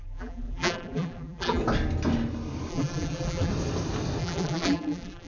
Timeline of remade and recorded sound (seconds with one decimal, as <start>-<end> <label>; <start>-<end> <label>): 0.0-1.6 remade; 1.6-2.7 recorded; 2.7-3.5 remade; 3.5-4.2 recorded; 4.2-5.3 remade